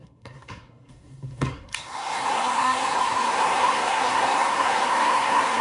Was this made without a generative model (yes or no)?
no